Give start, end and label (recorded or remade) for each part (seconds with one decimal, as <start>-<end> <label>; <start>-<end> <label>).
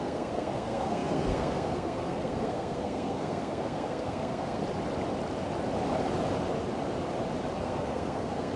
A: 0.0-4.6 remade; 4.6-7.6 recorded; 7.6-8.6 remade